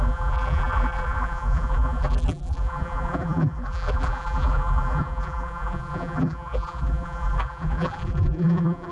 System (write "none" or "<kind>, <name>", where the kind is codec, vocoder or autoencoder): vocoder, BigVGAN v2